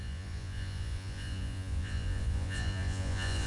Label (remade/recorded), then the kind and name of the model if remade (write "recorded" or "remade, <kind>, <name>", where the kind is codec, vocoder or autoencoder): remade, vocoder, Vocos